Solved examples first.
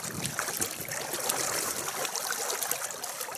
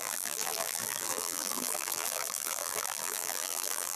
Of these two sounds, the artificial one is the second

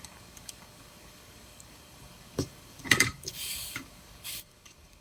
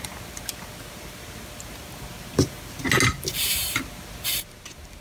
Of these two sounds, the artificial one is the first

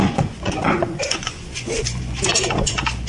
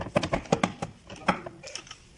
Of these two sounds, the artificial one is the first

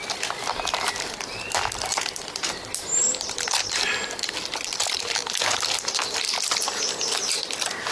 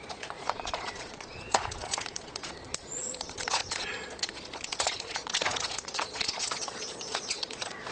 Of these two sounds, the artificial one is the second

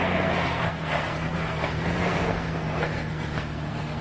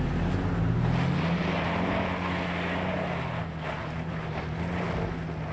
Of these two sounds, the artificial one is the first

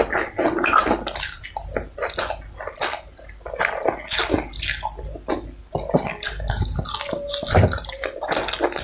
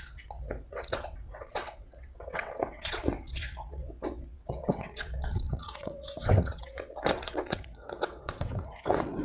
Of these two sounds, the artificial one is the second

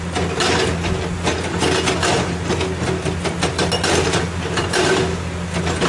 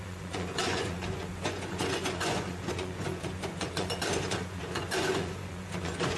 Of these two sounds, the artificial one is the second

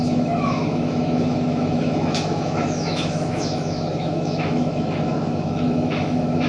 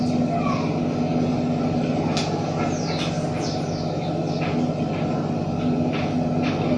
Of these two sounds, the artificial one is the first